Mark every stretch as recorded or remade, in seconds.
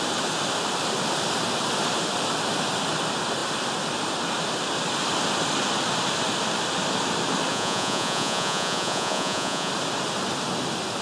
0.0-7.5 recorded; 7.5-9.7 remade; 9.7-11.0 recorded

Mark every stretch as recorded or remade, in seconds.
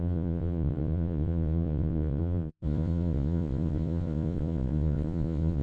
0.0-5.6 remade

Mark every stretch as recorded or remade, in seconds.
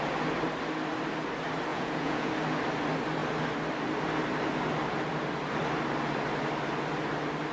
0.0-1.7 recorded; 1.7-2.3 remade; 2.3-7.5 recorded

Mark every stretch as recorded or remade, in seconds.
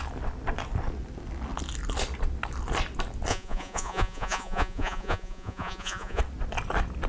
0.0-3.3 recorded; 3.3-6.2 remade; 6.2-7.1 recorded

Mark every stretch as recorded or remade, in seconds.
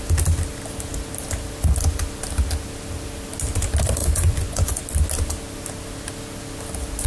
0.0-4.0 recorded; 4.0-4.8 remade; 4.8-7.1 recorded